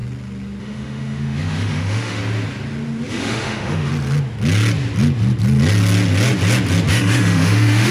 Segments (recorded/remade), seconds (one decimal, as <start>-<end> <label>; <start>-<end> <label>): 0.0-0.6 recorded; 0.6-2.2 remade; 2.2-3.1 recorded; 3.1-3.9 remade; 3.9-6.9 recorded; 6.9-7.9 remade